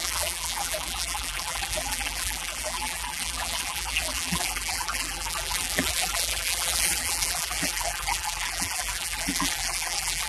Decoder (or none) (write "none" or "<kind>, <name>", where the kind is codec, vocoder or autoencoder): vocoder, BigVGAN v2